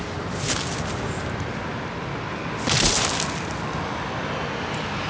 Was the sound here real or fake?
real